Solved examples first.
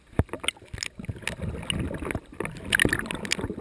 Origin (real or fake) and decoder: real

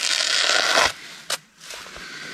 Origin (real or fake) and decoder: real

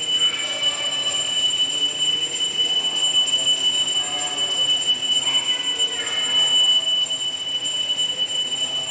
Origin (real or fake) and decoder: real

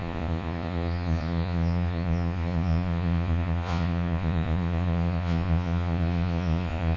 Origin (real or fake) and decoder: fake, vocoder, Vocos